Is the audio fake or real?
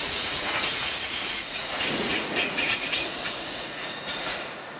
fake